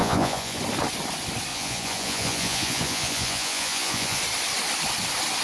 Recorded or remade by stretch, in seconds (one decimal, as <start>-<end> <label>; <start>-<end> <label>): 0.0-0.6 remade; 0.6-1.5 recorded; 1.5-4.2 remade; 4.2-5.4 recorded